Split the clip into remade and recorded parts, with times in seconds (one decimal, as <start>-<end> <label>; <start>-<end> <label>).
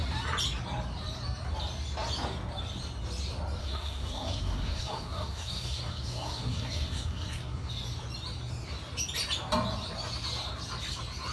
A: 0.0-3.6 recorded; 3.6-7.7 remade; 7.7-11.3 recorded